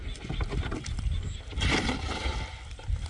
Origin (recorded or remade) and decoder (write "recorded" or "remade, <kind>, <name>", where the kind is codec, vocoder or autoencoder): recorded